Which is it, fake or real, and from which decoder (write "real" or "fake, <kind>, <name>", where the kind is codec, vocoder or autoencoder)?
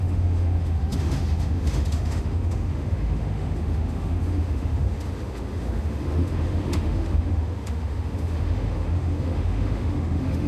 fake, autoencoder, DAC-VAE